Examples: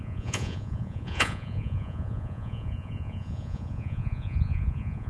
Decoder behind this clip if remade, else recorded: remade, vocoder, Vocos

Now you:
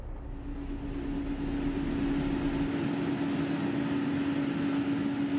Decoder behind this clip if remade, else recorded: recorded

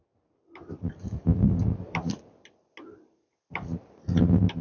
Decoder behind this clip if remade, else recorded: recorded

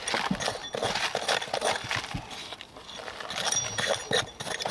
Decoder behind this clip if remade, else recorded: recorded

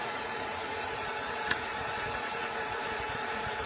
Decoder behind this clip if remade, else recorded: remade, vocoder, Vocos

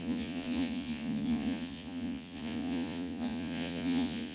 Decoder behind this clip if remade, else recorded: remade, vocoder, Vocos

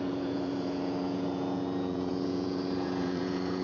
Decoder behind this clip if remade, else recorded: remade, vocoder, Vocos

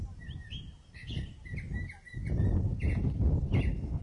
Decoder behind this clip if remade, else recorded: recorded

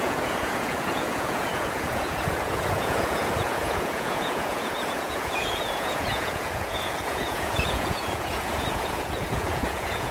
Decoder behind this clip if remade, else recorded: remade, vocoder, Vocos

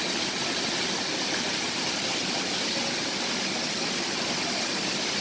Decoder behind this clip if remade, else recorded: recorded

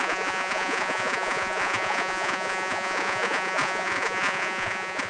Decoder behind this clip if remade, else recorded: remade, vocoder, Vocos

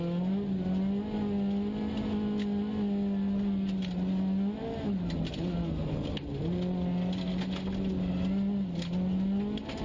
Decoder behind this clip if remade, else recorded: recorded